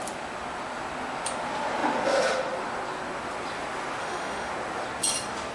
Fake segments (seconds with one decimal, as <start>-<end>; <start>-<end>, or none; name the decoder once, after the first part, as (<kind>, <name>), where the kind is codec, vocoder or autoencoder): 4.0-4.5 (autoencoder, DAC-VAE)